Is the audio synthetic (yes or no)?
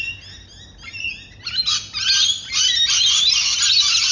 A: no